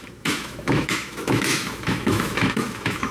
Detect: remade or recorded remade